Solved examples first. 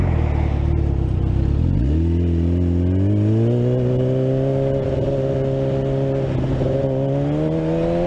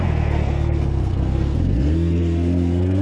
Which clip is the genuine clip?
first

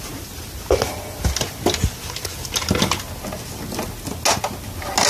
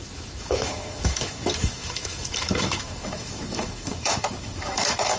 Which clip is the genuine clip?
first